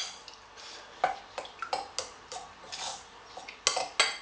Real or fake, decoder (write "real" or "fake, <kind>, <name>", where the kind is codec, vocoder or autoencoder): real